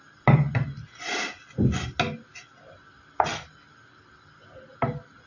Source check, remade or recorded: recorded